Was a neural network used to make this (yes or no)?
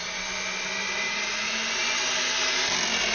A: no